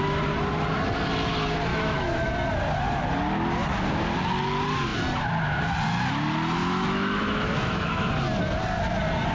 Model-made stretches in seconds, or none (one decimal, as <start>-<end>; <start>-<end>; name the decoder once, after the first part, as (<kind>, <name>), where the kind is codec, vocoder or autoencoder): 1.7-2.3 (autoencoder, DAC-VAE); 6.6-8.1